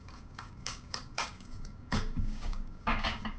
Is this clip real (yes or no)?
no